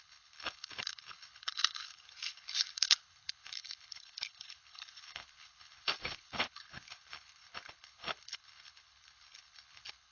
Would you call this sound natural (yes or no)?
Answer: no